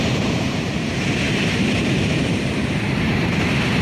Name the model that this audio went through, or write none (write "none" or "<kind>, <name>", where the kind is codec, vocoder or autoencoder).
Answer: vocoder, BigVGAN v2